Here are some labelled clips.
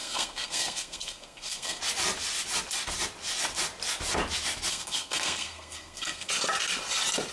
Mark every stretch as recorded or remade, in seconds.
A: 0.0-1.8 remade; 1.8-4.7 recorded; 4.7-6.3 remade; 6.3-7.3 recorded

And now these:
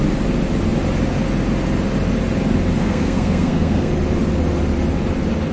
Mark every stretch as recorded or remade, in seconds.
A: 0.0-2.8 recorded; 2.8-3.9 remade; 3.9-5.5 recorded

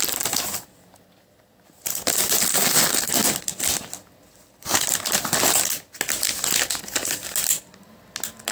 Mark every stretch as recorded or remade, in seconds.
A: 0.0-2.5 recorded; 2.5-3.1 remade; 3.1-8.5 recorded

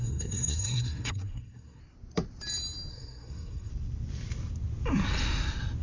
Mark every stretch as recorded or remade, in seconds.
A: 0.0-1.8 remade; 1.8-2.9 recorded; 2.9-3.7 remade; 3.7-5.8 recorded